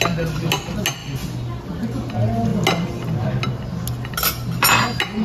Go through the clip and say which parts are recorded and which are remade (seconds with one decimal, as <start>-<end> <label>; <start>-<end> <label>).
0.0-5.2 recorded